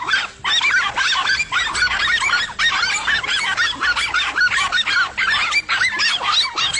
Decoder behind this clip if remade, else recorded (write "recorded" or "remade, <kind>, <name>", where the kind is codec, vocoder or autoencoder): recorded